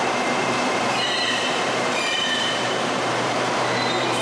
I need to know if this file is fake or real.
fake